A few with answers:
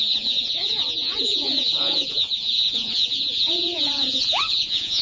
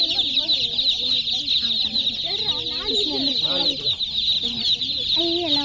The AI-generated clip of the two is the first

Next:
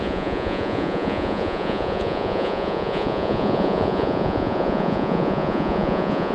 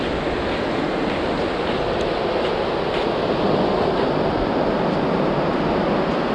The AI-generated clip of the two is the first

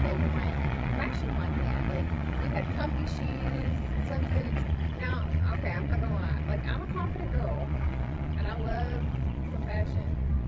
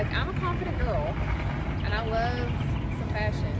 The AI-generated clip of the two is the first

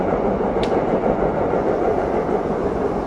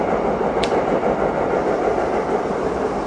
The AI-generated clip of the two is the first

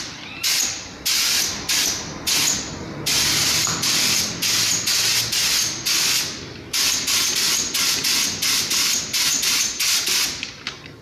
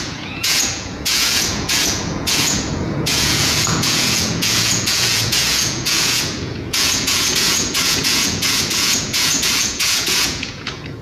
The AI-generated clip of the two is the second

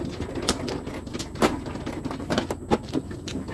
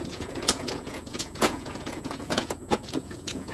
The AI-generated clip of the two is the second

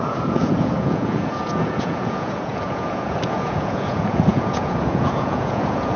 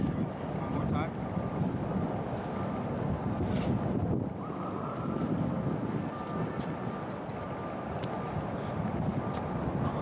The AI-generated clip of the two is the first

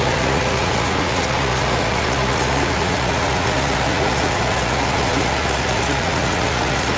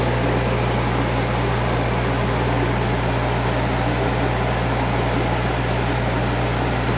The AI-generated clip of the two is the first